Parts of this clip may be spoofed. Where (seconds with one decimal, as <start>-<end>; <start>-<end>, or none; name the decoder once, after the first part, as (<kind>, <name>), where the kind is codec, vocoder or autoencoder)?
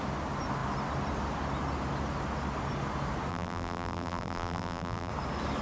3.3-5.1 (vocoder, BigVGAN v2)